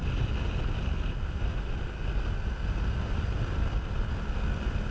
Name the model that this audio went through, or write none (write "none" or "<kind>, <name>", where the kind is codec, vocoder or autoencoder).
none